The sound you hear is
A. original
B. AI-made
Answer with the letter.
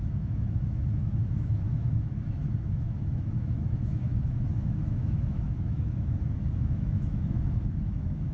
B